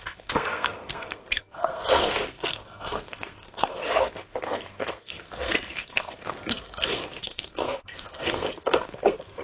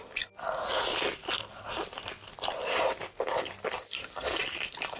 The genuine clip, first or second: second